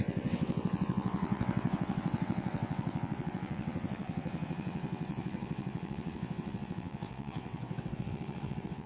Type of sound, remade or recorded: remade